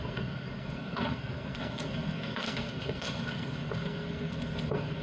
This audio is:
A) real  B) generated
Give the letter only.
B